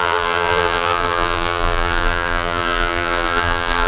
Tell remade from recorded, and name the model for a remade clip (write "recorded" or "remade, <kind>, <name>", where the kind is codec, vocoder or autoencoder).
remade, vocoder, BigVGAN v2